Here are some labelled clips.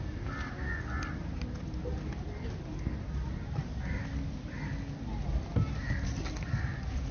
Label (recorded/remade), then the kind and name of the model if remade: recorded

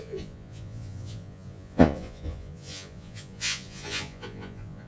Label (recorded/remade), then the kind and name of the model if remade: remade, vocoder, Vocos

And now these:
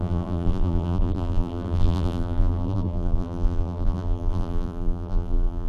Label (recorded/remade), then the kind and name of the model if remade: remade, vocoder, BigVGAN v2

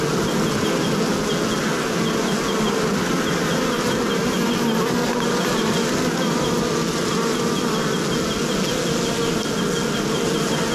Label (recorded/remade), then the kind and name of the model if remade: recorded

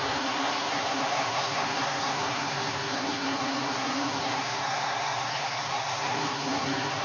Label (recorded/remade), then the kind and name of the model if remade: remade, codec, SNAC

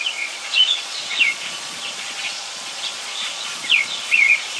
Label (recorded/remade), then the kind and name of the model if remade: remade, vocoder, Vocos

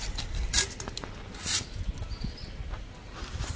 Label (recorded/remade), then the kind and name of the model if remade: recorded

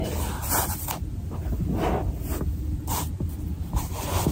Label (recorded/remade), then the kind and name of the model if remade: remade, vocoder, BigVGAN v2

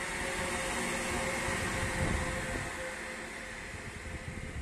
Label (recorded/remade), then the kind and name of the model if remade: recorded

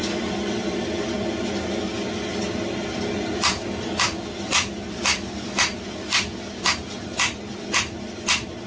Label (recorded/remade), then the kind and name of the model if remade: recorded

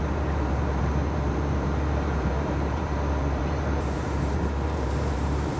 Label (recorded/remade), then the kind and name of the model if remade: remade, vocoder, BigVGAN v2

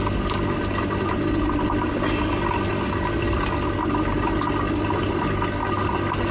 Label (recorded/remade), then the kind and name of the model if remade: recorded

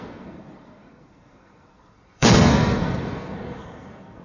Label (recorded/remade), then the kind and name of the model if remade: remade, codec, SNAC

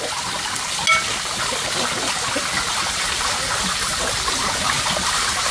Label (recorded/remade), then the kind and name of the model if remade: recorded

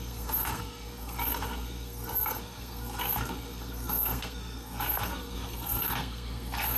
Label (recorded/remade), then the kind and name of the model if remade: remade, codec, SNAC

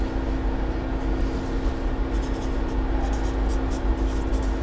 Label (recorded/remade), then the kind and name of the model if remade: recorded